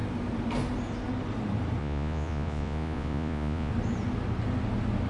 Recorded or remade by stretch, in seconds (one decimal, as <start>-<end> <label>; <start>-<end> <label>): 0.0-1.8 recorded; 1.8-3.7 remade; 3.7-5.1 recorded